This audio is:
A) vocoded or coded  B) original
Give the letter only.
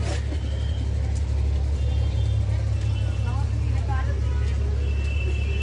B